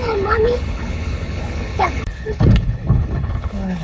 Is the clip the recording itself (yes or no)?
no